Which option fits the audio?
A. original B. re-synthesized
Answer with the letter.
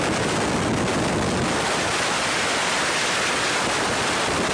A